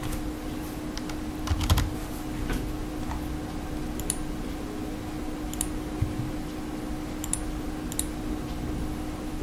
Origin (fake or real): real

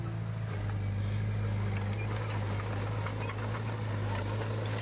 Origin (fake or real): real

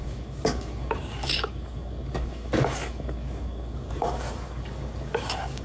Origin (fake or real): fake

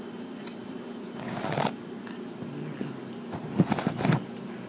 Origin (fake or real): real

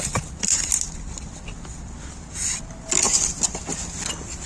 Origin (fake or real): real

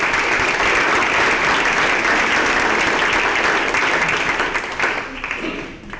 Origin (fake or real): real